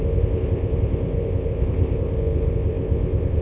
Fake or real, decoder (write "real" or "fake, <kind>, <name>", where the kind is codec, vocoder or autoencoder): fake, codec, ZipCodec